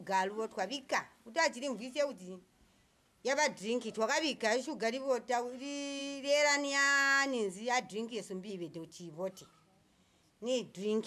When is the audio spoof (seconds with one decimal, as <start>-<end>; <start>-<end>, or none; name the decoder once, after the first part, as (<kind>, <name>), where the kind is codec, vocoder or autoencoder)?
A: none